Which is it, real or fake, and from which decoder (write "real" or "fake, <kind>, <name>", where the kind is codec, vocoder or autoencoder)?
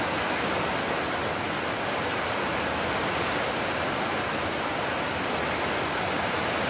real